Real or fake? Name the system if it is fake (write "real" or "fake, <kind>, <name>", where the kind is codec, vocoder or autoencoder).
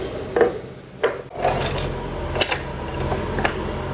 real